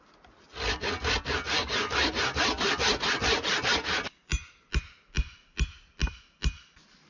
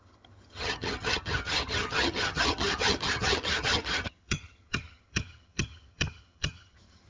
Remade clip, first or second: second